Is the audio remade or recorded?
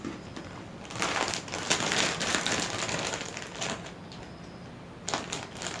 recorded